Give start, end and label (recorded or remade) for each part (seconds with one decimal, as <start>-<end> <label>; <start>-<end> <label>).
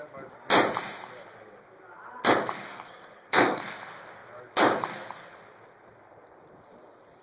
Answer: 0.0-2.7 recorded; 2.7-3.6 remade; 3.6-7.2 recorded